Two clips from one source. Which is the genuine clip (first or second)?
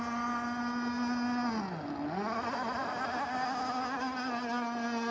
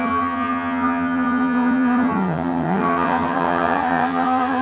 first